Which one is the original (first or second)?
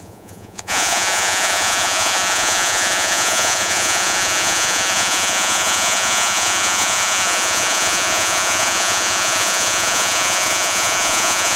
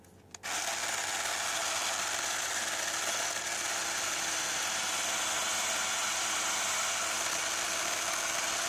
second